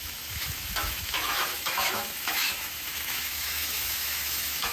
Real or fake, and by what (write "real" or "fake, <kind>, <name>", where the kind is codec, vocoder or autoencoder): fake, autoencoder, DAC-VAE